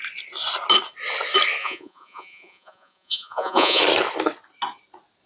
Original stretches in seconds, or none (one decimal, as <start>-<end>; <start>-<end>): 0.0-1.6; 3.8-5.3